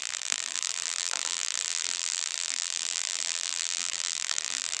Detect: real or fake fake